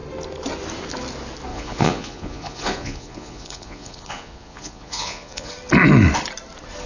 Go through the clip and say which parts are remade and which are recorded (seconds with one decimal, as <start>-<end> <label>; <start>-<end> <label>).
0.0-1.5 recorded; 1.5-5.5 remade; 5.5-6.9 recorded